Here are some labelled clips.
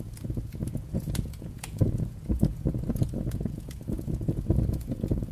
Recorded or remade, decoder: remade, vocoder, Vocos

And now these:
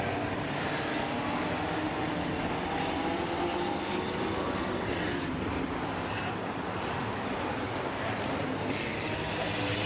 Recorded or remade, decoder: recorded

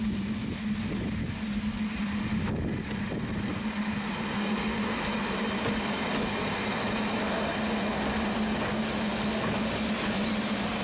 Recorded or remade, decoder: recorded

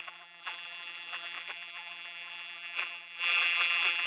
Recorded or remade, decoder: remade, vocoder, BigVGAN v2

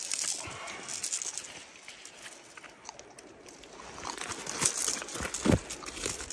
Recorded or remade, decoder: recorded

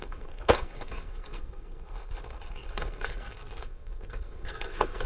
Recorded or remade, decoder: remade, codec, SNAC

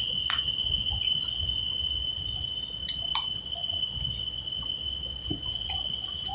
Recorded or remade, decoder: remade, vocoder, Vocos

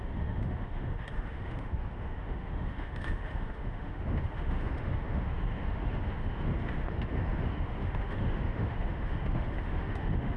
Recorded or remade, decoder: remade, autoencoder, DAC-VAE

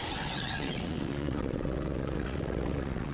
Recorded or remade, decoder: remade, vocoder, WaveNeXt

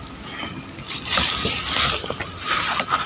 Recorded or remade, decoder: recorded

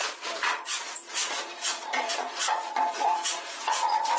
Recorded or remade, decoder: remade, vocoder, Vocos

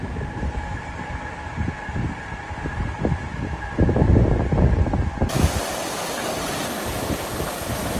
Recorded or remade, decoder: recorded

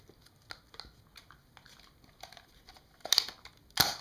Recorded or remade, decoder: recorded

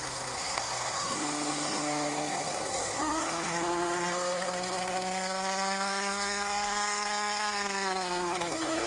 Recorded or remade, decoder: remade, codec, SNAC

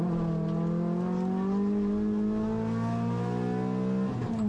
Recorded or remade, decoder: recorded